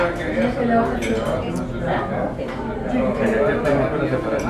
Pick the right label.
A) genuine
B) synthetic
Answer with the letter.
A